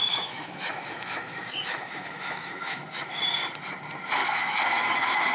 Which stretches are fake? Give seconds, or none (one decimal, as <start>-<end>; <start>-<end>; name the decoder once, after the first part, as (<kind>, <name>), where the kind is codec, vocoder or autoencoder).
0.0-3.2 (autoencoder, DAC-VAE); 4.2-5.3